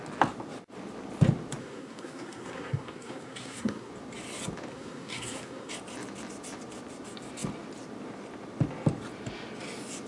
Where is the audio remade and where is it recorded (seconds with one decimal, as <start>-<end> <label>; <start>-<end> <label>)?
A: 0.0-1.6 recorded; 1.6-3.9 remade; 3.9-4.7 recorded; 4.7-5.7 remade; 5.7-10.1 recorded